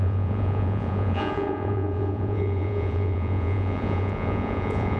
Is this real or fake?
fake